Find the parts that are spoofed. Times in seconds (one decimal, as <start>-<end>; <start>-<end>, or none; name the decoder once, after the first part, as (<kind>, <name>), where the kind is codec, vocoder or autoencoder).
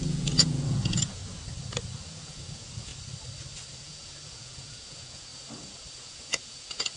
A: 0.0-1.2 (vocoder, Vocos); 2.1-2.9; 3.8-5.3; 6.0-7.0